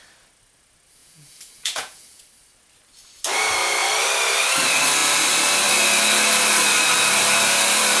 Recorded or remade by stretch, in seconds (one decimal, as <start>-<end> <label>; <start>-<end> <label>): 0.0-1.0 recorded; 1.0-2.2 remade; 2.2-8.0 recorded